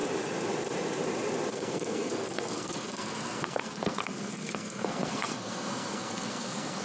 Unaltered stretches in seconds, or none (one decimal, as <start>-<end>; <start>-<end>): 0.0-1.5